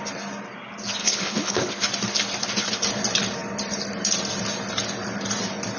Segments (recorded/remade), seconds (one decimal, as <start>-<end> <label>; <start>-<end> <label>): 0.0-1.0 recorded; 1.0-1.7 remade; 1.7-5.8 recorded